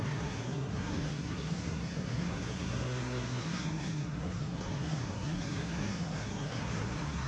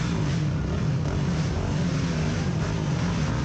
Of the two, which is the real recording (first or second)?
second